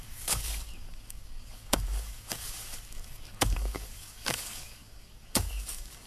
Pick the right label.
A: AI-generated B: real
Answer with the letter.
A